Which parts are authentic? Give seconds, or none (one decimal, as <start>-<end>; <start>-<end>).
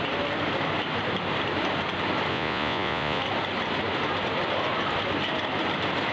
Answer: 0.0-2.3; 3.2-6.1